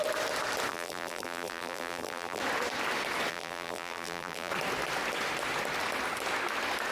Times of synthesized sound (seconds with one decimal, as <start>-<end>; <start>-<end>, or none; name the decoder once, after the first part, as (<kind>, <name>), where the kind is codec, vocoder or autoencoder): 0.7-2.4 (vocoder, BigVGAN v2); 3.3-4.5